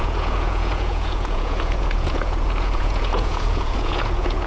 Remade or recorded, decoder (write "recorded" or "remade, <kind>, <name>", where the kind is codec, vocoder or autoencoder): remade, vocoder, Vocos